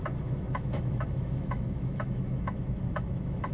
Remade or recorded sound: remade